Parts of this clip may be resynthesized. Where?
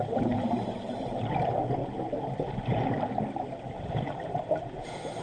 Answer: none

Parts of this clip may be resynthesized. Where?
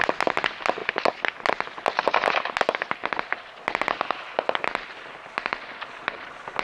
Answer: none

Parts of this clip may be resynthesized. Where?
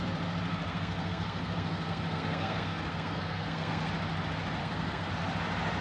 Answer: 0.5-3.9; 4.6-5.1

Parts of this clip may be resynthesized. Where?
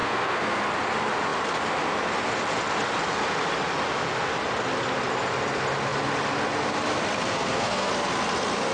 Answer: 0.0-0.6; 7.3-7.9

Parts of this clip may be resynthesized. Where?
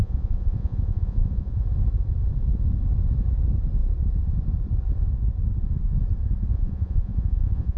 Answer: 0.0-1.6; 6.5-7.8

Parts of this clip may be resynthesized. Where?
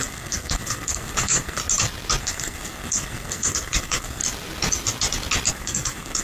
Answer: 0.0-1.6; 2.2-4.2; 5.5-6.2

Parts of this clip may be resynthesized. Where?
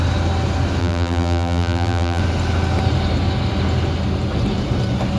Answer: 0.8-2.2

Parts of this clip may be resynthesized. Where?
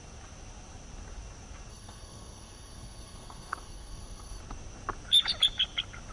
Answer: 1.7-4.4